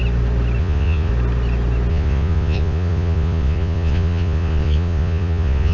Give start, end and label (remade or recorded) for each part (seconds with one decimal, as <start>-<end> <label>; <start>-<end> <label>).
0.0-0.6 recorded; 0.6-1.1 remade; 1.1-1.9 recorded; 1.9-5.7 remade